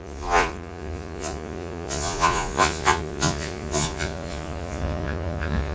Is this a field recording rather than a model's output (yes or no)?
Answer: no